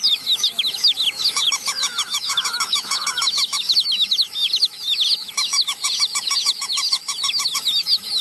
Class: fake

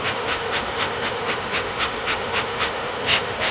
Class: fake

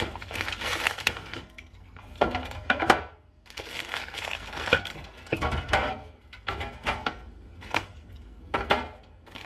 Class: fake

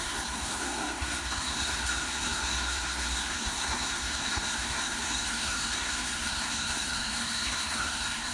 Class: fake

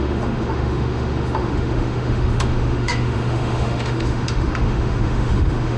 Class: fake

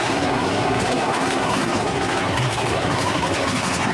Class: fake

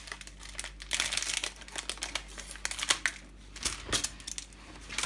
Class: real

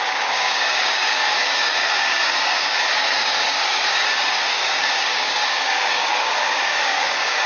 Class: fake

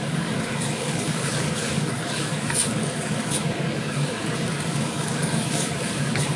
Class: fake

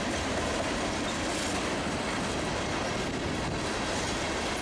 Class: real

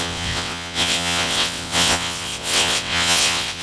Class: fake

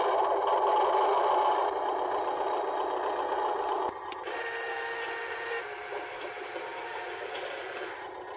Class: real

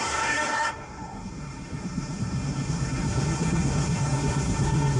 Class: fake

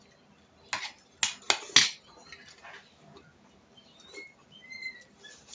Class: real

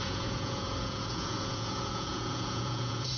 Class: fake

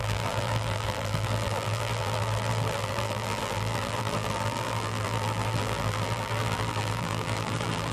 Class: fake